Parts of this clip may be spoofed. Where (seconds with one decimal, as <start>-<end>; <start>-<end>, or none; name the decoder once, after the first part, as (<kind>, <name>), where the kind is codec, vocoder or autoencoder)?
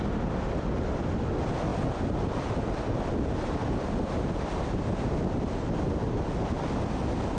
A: none